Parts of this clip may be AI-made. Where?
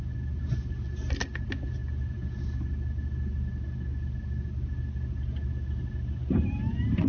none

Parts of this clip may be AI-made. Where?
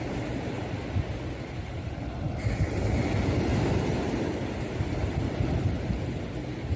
none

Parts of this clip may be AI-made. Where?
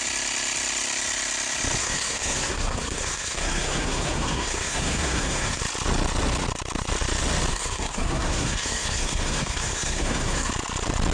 1.8-5.6 (codec, SNAC); 7.5-10.5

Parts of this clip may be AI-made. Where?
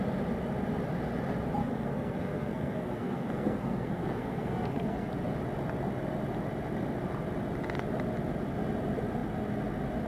1.6-5.1 (codec, SNAC)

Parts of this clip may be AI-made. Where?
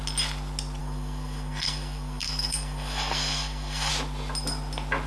0.8-3.9 (codec, SNAC)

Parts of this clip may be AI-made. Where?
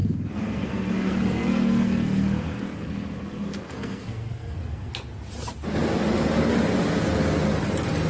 0.0-4.9 (codec, SNAC)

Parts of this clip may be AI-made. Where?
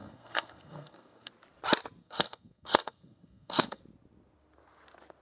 0.0-1.3 (codec, SNAC); 2.0-3.8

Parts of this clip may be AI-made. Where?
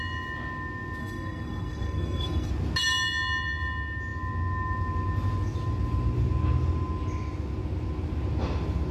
1.0-2.5 (codec, SNAC)